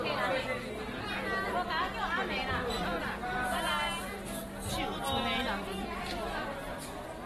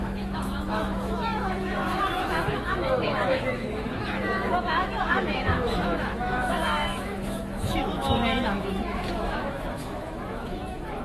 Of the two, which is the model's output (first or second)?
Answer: second